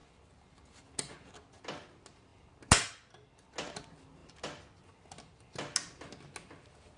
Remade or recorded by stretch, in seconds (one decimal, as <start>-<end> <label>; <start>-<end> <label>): 0.0-7.0 recorded